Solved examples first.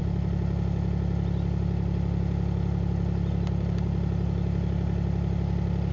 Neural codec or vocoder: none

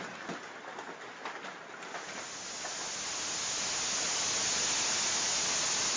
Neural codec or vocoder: none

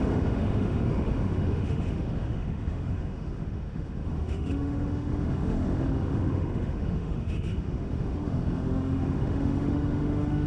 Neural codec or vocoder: autoencoder, DAC-VAE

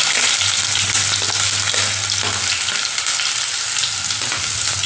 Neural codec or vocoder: none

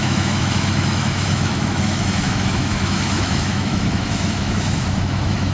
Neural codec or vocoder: autoencoder, DAC-VAE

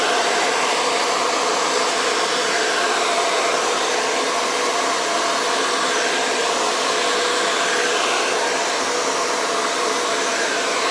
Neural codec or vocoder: none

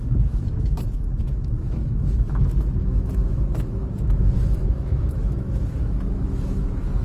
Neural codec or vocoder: autoencoder, DAC-VAE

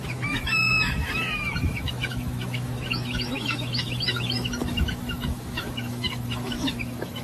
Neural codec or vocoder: autoencoder, DAC-VAE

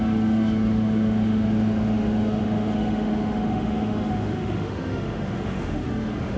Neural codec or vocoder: autoencoder, DAC-VAE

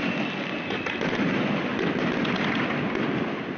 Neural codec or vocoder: none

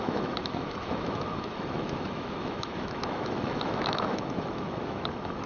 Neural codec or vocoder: autoencoder, DAC-VAE